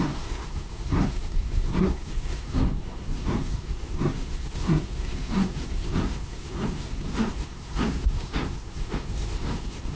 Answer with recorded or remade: remade